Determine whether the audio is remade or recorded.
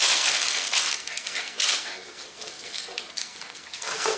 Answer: remade